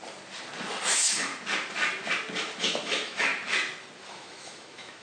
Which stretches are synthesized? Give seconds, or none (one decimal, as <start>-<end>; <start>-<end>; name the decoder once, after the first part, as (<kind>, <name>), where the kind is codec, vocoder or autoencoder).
0.9-1.3 (autoencoder, DAC-VAE); 2.6-3.3; 4.1-5.0